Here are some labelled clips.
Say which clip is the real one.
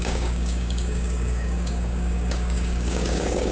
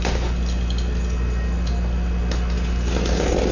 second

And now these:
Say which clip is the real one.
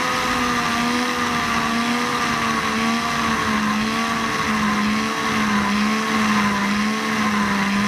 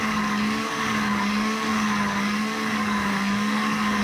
first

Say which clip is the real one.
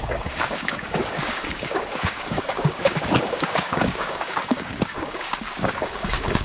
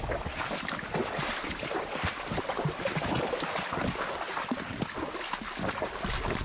second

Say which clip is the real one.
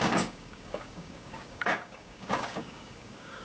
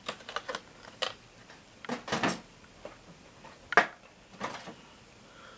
second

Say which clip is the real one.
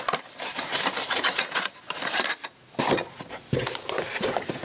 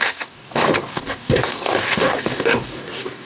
first